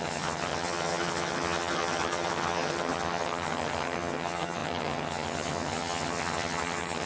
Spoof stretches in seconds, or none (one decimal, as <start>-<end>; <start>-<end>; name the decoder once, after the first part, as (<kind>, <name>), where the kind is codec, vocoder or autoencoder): 0.0-7.1 (vocoder, HiFi-GAN)

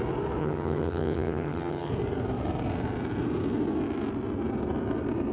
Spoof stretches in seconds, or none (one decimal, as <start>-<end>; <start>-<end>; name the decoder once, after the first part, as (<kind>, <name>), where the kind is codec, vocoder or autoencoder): 0.4-1.9 (vocoder, HiFi-GAN)

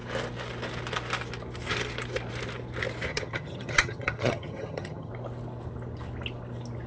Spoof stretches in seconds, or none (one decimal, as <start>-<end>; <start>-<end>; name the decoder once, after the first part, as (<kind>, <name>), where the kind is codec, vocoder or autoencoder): 3.1-5.1 (vocoder, HiFi-GAN)

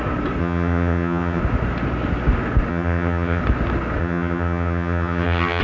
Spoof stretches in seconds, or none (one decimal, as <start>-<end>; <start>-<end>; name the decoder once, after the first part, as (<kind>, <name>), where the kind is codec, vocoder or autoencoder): 0.4-1.4 (vocoder, HiFi-GAN); 2.7-3.4; 4.0-5.6